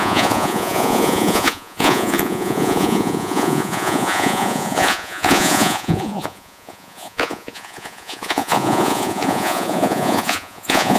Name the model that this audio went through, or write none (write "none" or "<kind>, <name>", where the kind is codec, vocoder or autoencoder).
vocoder, Vocos